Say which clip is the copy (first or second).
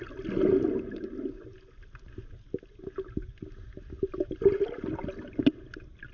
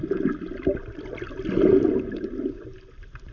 second